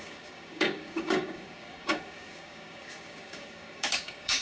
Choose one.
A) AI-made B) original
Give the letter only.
A